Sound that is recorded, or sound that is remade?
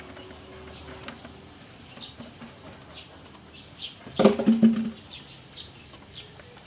recorded